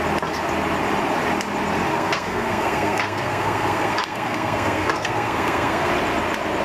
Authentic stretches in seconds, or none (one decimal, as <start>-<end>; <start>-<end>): 0.0-1.9; 5.9-6.6